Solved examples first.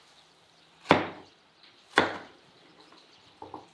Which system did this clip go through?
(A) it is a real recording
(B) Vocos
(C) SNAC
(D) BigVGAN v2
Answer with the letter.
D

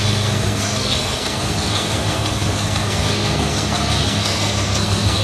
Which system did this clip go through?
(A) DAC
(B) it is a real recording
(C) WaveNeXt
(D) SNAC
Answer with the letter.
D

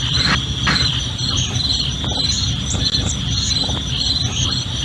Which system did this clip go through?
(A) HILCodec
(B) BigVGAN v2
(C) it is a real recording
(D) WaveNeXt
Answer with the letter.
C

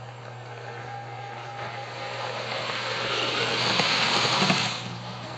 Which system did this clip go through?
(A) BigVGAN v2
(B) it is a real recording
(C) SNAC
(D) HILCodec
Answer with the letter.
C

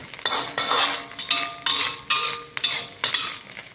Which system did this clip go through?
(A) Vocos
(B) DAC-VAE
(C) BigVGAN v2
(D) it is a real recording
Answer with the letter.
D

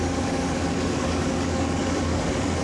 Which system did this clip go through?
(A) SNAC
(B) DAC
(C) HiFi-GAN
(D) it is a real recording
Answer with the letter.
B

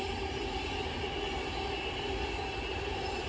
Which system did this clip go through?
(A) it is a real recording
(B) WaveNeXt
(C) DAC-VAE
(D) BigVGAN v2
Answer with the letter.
A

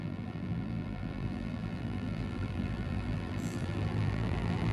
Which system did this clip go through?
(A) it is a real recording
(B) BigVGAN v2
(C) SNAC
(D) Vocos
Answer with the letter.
B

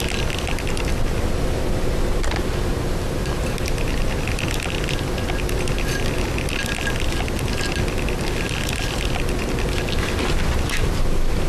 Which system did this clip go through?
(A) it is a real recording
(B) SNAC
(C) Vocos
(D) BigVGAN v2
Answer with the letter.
A